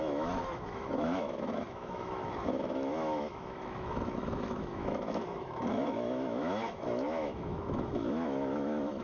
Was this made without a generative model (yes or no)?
no